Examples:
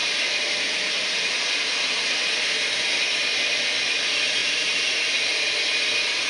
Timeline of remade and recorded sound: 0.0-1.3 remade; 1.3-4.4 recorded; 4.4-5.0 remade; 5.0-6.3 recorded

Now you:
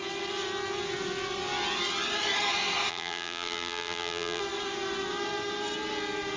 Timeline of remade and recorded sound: 0.0-2.9 recorded; 2.9-4.4 remade; 4.4-6.4 recorded

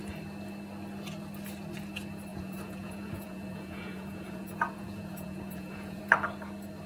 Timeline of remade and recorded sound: 0.0-2.3 recorded; 2.3-6.0 remade; 6.0-6.9 recorded

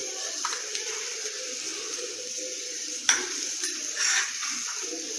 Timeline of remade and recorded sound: 0.0-5.2 recorded

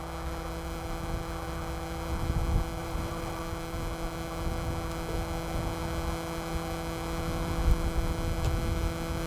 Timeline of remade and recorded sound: 0.0-2.8 recorded; 2.8-3.4 remade; 3.4-9.3 recorded

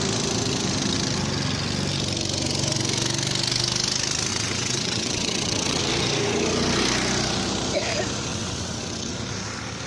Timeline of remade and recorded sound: 0.0-4.3 recorded; 4.3-5.8 remade; 5.8-8.3 recorded; 8.3-9.1 remade; 9.1-9.9 recorded